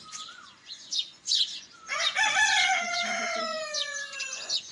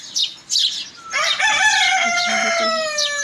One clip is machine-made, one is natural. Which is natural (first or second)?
second